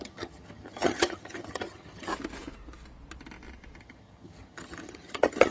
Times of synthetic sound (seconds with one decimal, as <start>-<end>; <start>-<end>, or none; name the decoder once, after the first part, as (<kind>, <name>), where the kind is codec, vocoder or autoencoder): 0.0-2.1 (vocoder, HiFi-GAN); 3.8-5.5